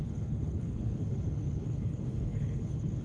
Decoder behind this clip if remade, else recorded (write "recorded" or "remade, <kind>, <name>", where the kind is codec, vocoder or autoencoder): remade, codec, HILCodec